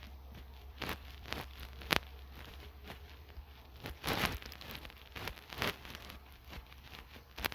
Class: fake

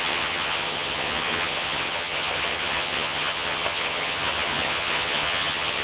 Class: fake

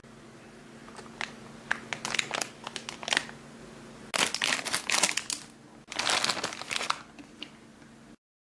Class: real